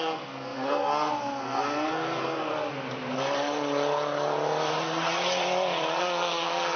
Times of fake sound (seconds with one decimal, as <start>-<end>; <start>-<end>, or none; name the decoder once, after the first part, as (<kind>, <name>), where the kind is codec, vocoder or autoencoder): 0.0-2.5 (codec, SNAC); 6.0-6.8